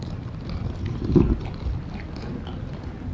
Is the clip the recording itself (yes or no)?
yes